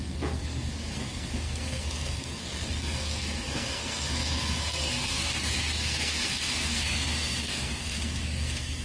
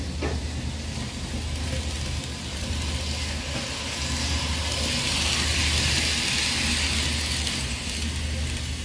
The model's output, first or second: first